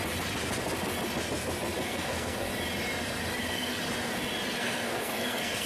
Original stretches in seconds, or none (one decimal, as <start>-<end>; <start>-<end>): 0.0-1.8; 2.5-3.4; 3.8-4.6